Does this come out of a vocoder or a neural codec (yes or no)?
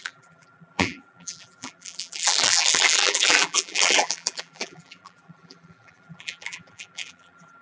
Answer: yes